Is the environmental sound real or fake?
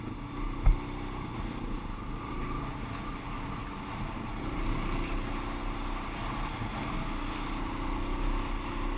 real